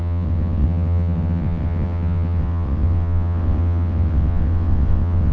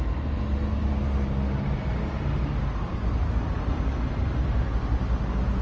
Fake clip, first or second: first